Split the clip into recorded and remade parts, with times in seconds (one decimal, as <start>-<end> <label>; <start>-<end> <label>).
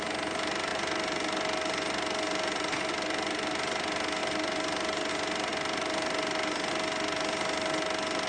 0.0-8.3 recorded